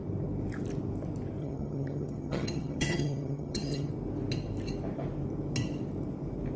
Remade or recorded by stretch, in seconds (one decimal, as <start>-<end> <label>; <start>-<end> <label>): 0.0-1.4 recorded; 1.4-3.9 remade; 3.9-6.6 recorded